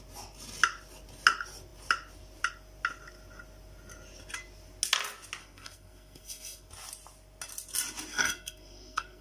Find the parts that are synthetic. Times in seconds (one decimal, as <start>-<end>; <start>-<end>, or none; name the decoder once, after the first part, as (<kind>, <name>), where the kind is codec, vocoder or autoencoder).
5.4-6.7 (codec, SNAC); 8.1-9.2